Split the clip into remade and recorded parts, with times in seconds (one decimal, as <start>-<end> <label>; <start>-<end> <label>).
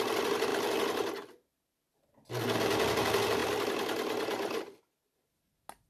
0.0-5.9 recorded